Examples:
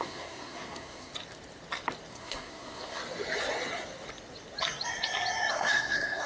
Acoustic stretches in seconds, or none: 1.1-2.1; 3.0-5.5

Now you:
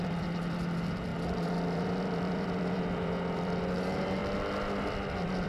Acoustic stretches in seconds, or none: 4.2-5.1